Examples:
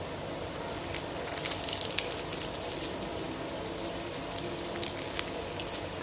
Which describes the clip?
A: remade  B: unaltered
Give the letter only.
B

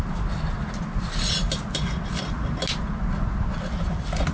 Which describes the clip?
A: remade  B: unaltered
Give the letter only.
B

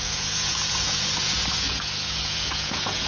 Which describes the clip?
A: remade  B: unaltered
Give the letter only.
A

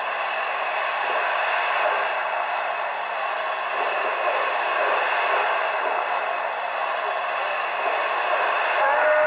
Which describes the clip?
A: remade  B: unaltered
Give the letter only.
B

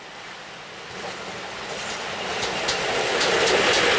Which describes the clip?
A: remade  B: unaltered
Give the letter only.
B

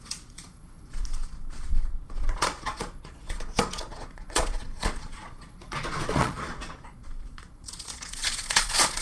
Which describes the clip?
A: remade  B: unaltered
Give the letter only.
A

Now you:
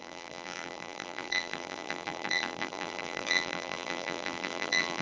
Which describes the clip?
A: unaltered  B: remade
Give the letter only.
B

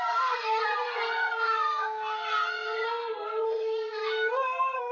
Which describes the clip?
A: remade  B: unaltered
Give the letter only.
A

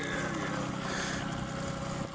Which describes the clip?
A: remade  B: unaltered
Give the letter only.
B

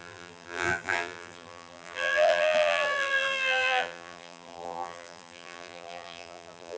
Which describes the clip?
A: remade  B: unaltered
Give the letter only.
A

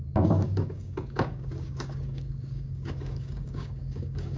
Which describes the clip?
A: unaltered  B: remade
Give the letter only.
B